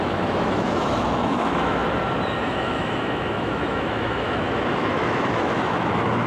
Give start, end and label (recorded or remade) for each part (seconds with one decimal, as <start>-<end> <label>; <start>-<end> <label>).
0.0-1.8 remade; 1.8-2.4 recorded; 2.4-6.3 remade